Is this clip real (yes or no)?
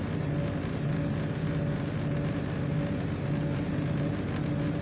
yes